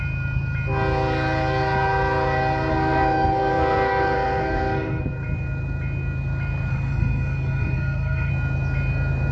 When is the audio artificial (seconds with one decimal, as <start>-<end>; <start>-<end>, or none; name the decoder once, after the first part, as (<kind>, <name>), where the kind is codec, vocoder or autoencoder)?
2.7-5.0 (codec, SNAC); 6.7-8.3